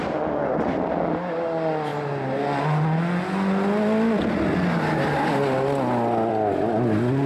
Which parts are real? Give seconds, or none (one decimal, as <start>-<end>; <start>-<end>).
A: 0.0-7.3